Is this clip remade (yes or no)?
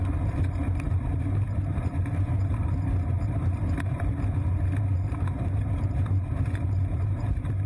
yes